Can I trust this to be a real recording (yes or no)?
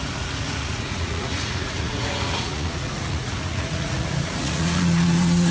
no